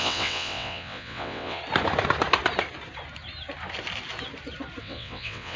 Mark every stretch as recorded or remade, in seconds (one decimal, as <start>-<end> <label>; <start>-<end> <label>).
0.0-1.6 remade; 1.6-4.8 recorded; 4.8-5.6 remade